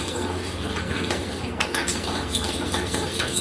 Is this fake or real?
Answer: fake